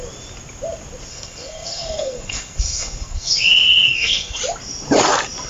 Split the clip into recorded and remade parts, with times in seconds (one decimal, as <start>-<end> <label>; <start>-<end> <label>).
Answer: 0.0-1.1 recorded; 1.1-4.4 remade; 4.4-5.5 recorded